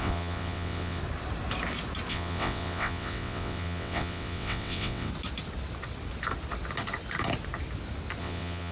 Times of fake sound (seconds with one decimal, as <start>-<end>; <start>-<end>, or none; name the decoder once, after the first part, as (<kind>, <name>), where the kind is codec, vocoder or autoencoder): 0.0-1.0 (vocoder, WaveNeXt); 2.1-5.1; 8.2-8.7